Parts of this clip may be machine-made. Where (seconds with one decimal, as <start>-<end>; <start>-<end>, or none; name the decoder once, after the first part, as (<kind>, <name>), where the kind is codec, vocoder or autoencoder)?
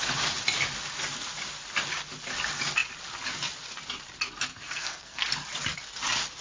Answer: 4.5-5.3 (codec, SNAC)